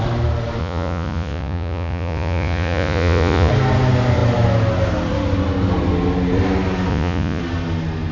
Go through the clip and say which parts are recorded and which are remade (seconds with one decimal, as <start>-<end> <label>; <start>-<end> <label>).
0.0-0.6 recorded; 0.6-3.5 remade; 3.5-6.9 recorded; 6.9-7.4 remade; 7.4-8.1 recorded